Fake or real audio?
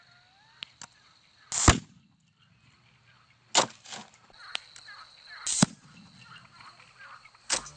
real